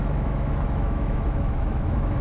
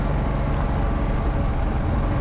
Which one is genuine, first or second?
second